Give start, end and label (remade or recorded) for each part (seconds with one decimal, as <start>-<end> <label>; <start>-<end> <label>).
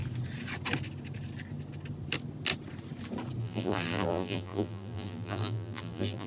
0.0-3.4 recorded; 3.4-6.3 remade